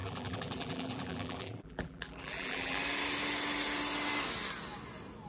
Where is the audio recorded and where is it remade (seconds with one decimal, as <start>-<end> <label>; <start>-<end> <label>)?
0.0-2.8 remade; 2.8-5.3 recorded